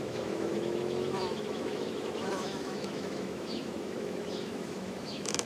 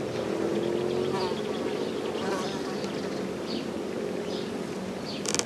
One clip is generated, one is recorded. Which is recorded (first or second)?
second